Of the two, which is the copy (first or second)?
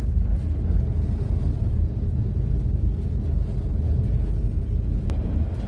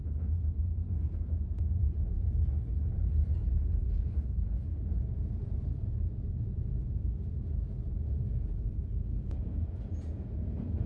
second